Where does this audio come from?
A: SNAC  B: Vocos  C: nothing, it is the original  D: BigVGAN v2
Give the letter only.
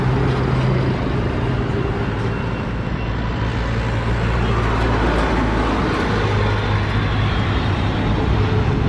C